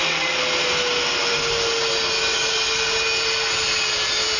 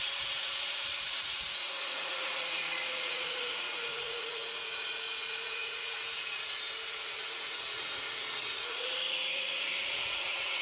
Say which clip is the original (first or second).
first